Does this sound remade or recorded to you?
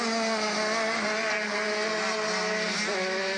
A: recorded